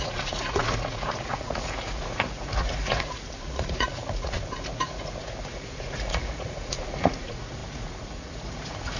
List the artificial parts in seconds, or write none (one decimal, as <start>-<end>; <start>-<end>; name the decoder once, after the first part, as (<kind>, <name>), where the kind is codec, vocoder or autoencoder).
0.0-9.0 (vocoder, Vocos)